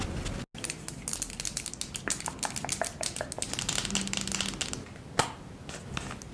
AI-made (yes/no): no